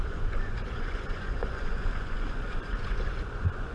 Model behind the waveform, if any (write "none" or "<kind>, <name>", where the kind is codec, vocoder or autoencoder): vocoder, Vocos